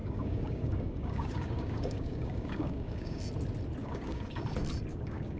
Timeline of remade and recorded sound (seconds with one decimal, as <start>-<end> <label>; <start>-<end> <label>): 0.0-3.2 remade; 3.2-3.8 recorded; 3.8-4.4 remade; 4.4-4.9 recorded; 4.9-5.4 remade